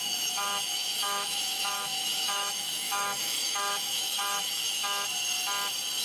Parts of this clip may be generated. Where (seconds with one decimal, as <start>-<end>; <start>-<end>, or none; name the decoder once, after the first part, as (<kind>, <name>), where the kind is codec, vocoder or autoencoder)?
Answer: 0.0-4.8 (autoencoder, DAC-VAE)